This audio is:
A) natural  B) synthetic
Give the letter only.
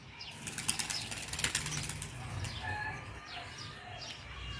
A